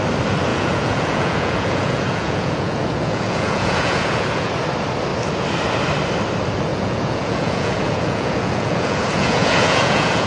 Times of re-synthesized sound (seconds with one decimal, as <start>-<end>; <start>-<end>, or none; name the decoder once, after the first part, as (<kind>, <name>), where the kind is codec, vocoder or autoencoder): 0.5-4.5 (vocoder, Vocos); 6.7-10.3